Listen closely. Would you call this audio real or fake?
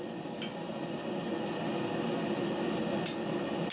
real